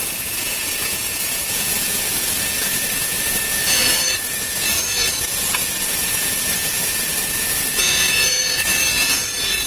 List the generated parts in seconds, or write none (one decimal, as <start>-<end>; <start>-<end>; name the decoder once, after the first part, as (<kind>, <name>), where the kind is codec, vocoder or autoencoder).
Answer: 0.0-9.7 (vocoder, Vocos)